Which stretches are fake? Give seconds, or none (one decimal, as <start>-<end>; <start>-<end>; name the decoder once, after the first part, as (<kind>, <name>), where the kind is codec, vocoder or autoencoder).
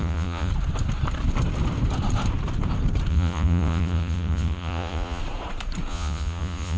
0.0-0.5 (vocoder, Vocos); 3.1-5.2; 5.9-6.8